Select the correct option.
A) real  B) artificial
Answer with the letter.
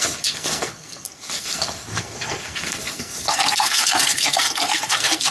B